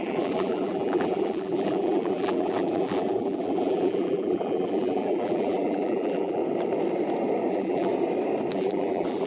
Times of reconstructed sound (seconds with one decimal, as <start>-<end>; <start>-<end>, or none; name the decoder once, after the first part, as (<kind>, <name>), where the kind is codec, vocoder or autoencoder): 0.0-6.4 (vocoder, BigVGAN v2); 7.5-7.9; 8.5-9.3